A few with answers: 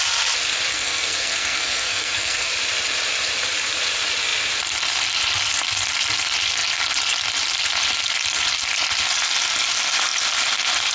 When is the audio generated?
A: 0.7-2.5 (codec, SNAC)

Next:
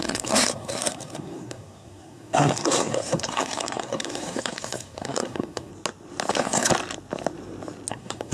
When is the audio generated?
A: 0.0-5.7 (codec, SNAC); 6.3-6.7; 7.9-8.3

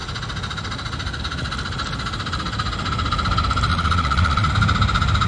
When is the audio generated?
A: 3.7-4.5 (vocoder, Vocos)

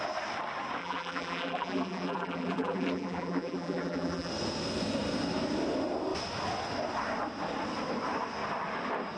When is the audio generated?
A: 0.8-4.3 (vocoder, BigVGAN v2)

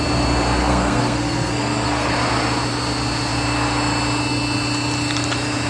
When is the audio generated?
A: 0.6-2.1 (codec, SNAC)

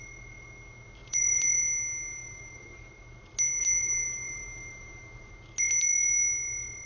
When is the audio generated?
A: 1.0-1.6 (vocoder, BigVGAN v2); 2.2-2.9; 3.6-5.3